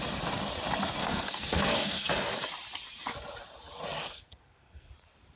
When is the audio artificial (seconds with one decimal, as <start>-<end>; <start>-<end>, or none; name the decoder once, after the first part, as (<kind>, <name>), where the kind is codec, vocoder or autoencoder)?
1.0-2.1 (codec, SNAC); 4.0-4.9